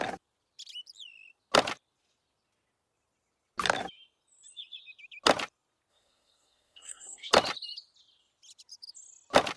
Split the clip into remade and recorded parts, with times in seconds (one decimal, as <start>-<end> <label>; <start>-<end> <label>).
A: 0.0-5.9 recorded; 5.9-7.3 remade; 7.3-9.6 recorded